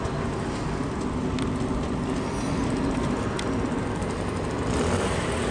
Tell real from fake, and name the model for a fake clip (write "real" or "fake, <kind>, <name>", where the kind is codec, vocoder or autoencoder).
real